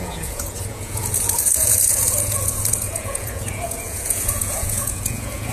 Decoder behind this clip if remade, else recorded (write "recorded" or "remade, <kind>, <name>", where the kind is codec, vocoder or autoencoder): remade, vocoder, Vocos